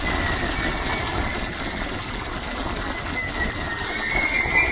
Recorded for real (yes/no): yes